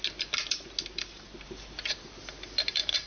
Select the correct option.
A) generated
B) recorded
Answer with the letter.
B